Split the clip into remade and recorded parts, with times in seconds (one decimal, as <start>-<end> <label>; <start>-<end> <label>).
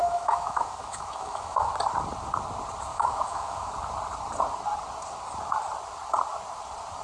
0.0-1.7 remade; 1.7-2.9 recorded; 2.9-3.7 remade; 3.7-7.0 recorded